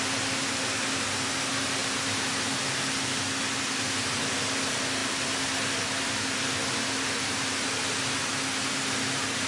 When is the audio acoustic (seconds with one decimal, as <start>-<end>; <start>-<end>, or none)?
0.0-9.5